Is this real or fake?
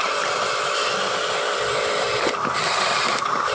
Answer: fake